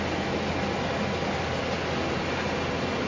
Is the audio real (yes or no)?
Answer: yes